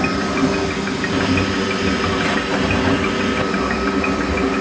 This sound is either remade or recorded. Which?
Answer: recorded